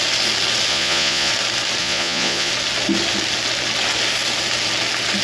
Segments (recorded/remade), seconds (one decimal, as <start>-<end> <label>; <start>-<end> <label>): 0.0-0.7 recorded; 0.7-1.3 remade; 1.3-1.8 recorded; 1.8-2.5 remade; 2.5-5.2 recorded